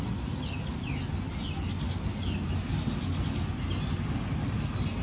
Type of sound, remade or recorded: recorded